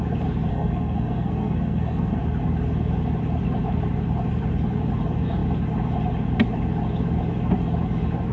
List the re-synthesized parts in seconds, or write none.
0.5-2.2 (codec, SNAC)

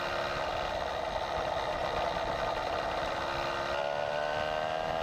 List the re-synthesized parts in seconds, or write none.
none

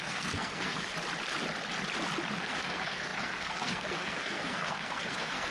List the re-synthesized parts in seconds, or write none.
0.0-0.9 (codec, SNAC); 2.4-5.5

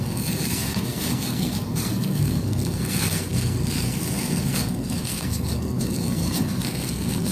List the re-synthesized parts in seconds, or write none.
0.0-7.3 (codec, SNAC)

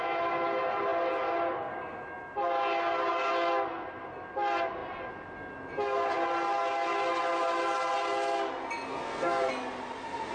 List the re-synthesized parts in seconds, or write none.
8.9-9.5 (codec, SNAC)

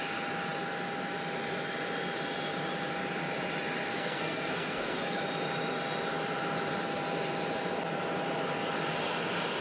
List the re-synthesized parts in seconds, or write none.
3.9-5.2 (codec, SNAC)

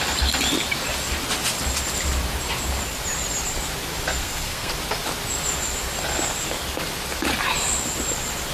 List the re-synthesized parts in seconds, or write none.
4.2-4.7 (codec, SNAC)